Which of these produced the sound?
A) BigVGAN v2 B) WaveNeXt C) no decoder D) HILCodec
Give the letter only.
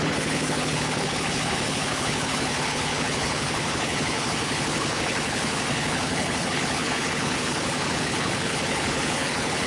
D